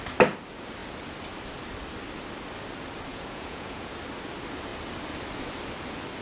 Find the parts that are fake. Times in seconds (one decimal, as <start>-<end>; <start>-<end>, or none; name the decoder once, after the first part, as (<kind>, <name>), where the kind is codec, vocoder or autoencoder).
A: 3.1-3.9 (vocoder, Vocos)